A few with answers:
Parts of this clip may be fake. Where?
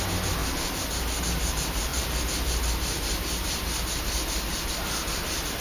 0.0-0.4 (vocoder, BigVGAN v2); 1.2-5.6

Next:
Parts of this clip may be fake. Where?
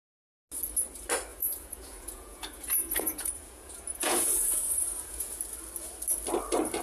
1.3-5.4 (vocoder, Vocos)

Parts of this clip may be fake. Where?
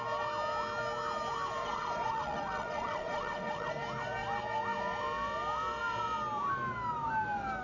1.6-3.7 (vocoder, WaveNeXt)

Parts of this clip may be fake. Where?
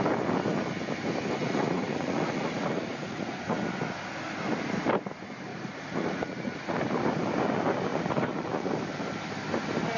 1.4-3.6 (vocoder, Vocos); 5.5-6.8; 7.9-8.7